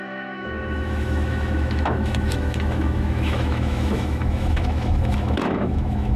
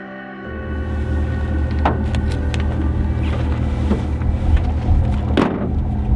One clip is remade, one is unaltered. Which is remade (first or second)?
first